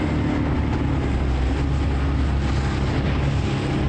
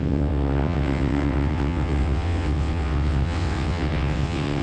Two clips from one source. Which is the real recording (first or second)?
first